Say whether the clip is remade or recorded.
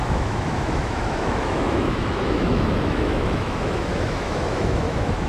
remade